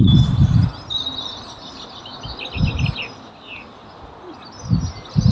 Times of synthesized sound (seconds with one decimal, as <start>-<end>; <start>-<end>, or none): 0.0-0.7; 1.4-2.1